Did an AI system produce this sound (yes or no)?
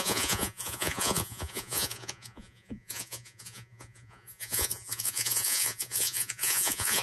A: yes